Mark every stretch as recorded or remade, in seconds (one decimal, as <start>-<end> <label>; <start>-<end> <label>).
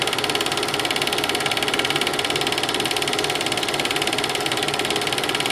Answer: 0.0-5.5 recorded